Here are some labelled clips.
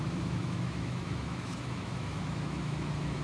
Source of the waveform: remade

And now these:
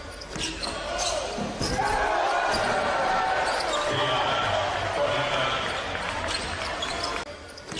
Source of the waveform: recorded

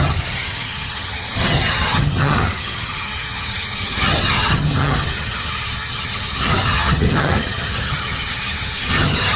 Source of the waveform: remade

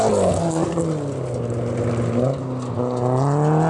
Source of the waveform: recorded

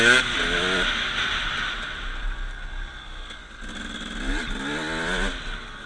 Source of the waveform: recorded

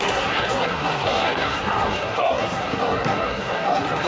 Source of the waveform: remade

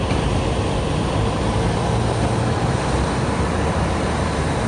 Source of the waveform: remade